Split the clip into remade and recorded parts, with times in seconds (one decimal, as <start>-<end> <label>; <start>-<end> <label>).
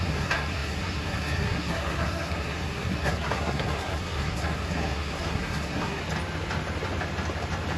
0.0-6.0 remade; 6.0-7.8 recorded